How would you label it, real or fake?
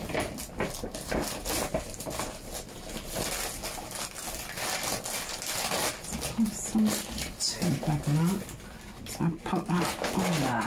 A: real